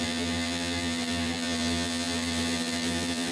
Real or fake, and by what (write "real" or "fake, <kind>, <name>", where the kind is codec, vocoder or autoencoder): fake, vocoder, BigVGAN v2